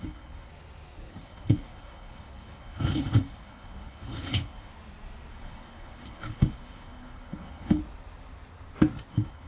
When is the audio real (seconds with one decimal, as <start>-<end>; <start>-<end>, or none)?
0.5-1.1; 4.7-5.3; 7.8-9.1